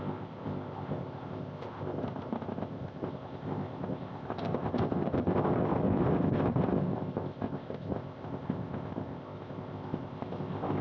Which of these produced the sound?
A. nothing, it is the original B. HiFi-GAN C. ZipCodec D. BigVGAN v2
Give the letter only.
C